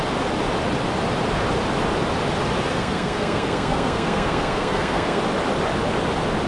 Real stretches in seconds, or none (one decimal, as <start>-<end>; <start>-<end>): 0.0-2.7; 5.2-6.5